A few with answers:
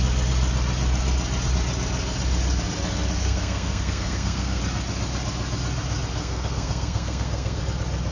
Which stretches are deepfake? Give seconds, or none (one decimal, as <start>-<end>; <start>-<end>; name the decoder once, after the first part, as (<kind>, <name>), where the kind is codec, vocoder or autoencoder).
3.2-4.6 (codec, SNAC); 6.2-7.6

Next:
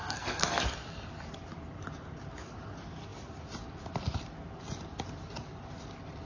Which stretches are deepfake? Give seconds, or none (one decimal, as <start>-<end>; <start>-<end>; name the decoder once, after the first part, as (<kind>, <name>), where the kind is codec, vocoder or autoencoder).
0.0-0.6 (codec, SNAC)

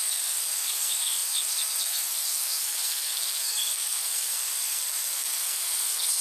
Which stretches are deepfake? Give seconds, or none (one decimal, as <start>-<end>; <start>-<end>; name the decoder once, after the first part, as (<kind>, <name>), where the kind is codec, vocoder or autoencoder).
0.0-6.2 (codec, SNAC)

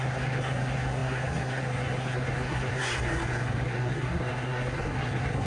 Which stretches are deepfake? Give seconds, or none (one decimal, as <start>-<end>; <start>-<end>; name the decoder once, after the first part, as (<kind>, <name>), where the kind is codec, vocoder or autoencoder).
0.0-5.5 (codec, SNAC)